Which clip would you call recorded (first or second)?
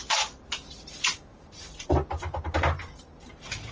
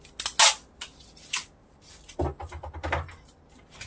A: second